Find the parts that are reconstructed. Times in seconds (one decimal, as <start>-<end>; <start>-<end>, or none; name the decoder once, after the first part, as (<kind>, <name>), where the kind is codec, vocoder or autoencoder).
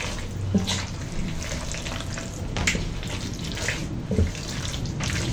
none